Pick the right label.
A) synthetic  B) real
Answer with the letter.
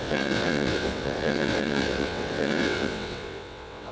A